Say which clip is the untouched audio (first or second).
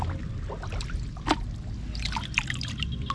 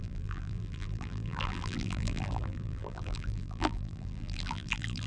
first